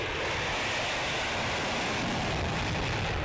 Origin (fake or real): real